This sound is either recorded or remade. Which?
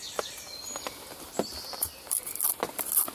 remade